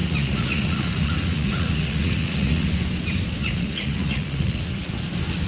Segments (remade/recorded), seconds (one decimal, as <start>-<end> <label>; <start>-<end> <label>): 0.0-2.7 remade; 2.7-3.4 recorded; 3.4-5.0 remade; 5.0-5.5 recorded